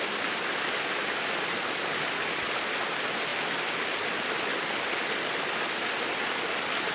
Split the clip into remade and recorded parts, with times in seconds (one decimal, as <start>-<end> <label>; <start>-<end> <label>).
0.0-6.9 recorded